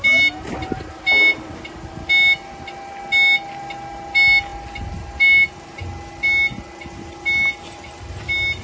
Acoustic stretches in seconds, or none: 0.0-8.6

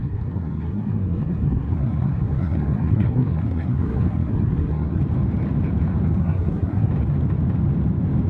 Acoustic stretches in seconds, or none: 5.0-6.2; 6.9-8.3